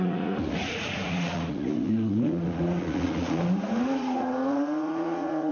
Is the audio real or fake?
fake